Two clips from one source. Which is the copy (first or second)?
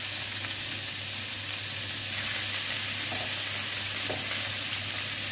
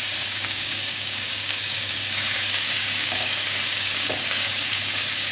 second